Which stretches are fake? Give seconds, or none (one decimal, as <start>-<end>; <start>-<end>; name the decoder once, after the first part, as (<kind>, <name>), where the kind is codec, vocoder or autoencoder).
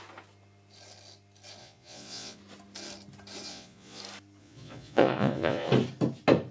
1.6-2.4 (vocoder, Vocos); 3.5-4.0; 4.4-5.7